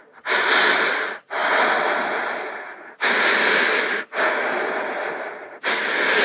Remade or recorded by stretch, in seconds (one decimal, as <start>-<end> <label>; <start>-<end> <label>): 0.0-6.2 recorded